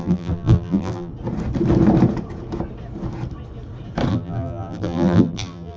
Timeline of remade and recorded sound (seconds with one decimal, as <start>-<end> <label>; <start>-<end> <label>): 0.0-1.1 remade; 1.1-4.1 recorded; 4.1-5.8 remade

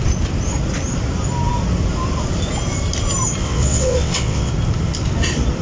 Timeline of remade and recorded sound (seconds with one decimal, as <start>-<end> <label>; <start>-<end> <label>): 0.0-3.4 recorded; 3.4-4.5 remade; 4.5-5.6 recorded

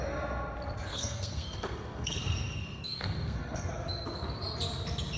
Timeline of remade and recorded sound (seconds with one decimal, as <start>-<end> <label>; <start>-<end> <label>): 0.0-0.9 recorded; 0.9-3.7 remade; 3.7-5.2 recorded